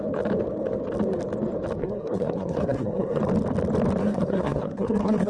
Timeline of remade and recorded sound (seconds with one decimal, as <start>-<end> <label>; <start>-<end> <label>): 0.0-1.8 recorded; 1.8-3.2 remade; 3.2-4.0 recorded; 4.0-5.3 remade